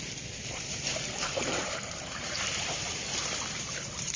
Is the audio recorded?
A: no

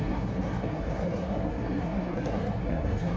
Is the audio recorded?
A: no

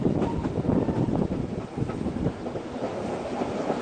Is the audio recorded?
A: yes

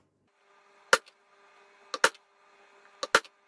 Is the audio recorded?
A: yes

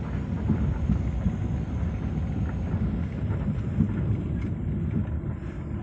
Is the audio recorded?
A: yes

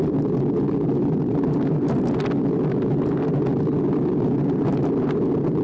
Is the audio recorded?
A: yes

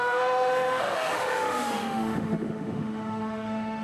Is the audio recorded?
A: no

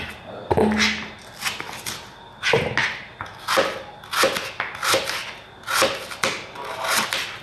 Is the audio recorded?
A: yes